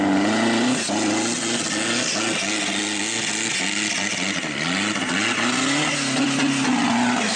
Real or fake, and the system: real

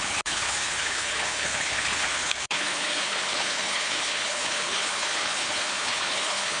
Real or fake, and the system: fake, codec, HILCodec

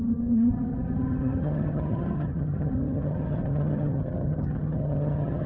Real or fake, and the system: fake, vocoder, HiFi-GAN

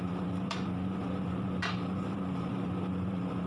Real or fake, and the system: fake, vocoder, BigVGAN v2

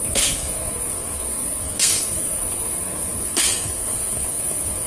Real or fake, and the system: fake, codec, SNAC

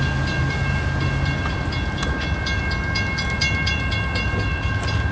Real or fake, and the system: real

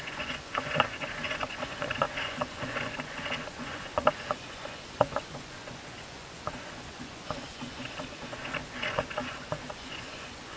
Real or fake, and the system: fake, vocoder, Vocos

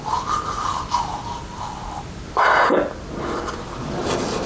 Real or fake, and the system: real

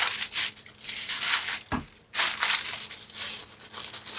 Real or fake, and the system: real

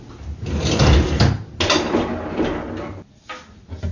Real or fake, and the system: real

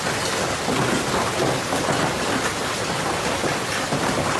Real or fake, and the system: real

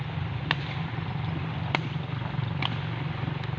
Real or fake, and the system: real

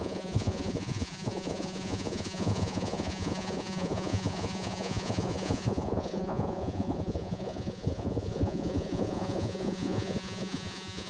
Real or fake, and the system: fake, vocoder, Vocos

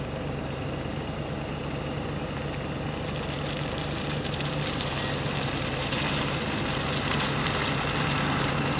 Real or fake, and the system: real